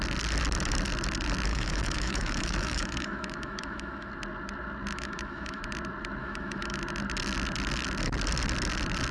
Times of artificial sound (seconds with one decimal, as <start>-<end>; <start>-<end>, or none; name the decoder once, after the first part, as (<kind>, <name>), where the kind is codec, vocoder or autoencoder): 1.5-4.1 (autoencoder, DAC-VAE); 4.9-5.6; 6.2-6.8